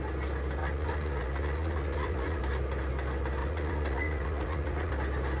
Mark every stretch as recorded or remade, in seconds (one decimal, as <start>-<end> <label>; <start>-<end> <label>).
0.0-0.6 recorded; 0.6-2.4 remade; 2.4-3.4 recorded; 3.4-4.9 remade; 4.9-5.4 recorded